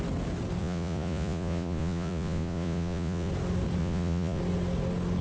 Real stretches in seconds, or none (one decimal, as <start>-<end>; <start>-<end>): 0.0-0.6; 3.3-3.8; 4.4-5.2